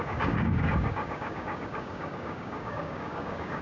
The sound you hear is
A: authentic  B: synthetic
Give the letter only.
B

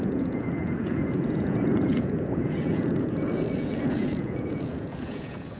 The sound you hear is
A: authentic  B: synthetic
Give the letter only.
B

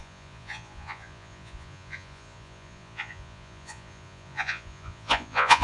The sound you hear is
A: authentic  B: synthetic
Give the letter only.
B